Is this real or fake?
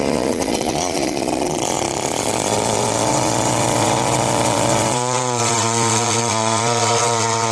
fake